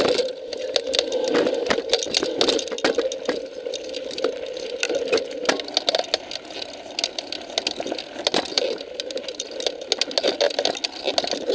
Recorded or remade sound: recorded